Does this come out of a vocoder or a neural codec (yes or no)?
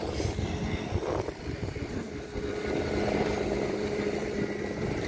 yes